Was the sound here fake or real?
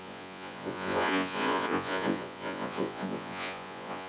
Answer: fake